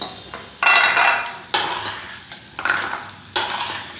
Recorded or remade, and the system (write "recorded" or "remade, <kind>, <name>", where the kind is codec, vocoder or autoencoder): recorded